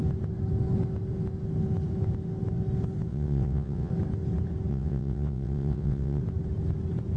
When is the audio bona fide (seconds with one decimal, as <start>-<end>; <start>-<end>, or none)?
0.0-3.1; 3.9-4.7; 6.2-7.2